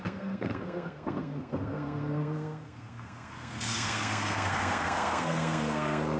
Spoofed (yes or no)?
yes